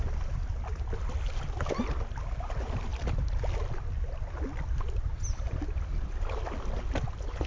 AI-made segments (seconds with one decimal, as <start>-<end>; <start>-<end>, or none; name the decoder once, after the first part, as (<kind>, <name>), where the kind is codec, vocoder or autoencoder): none